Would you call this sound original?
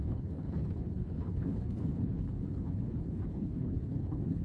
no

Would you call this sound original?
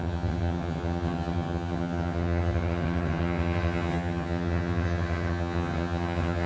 no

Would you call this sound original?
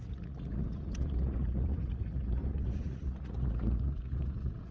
no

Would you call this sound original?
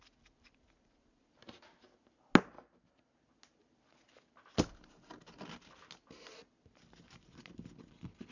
yes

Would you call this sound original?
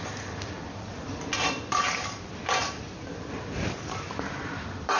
no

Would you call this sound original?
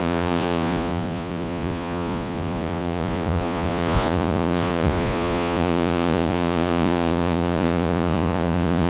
no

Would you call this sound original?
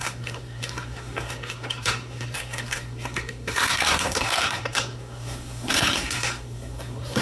no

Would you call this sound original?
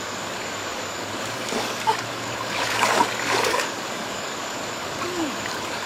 no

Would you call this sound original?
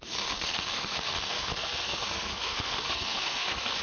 no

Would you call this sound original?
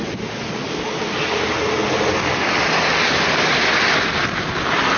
yes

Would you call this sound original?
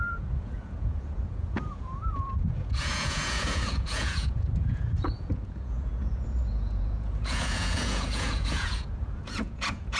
no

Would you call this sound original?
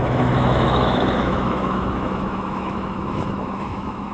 no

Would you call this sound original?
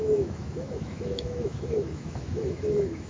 no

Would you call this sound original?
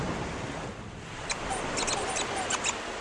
yes